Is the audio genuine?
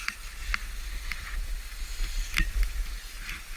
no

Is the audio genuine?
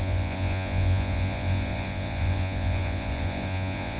no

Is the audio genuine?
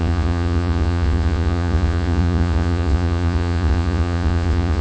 no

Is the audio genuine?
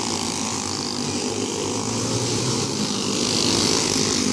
yes